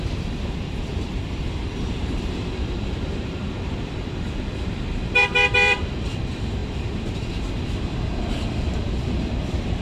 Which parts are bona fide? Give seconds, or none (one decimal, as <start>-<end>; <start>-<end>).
none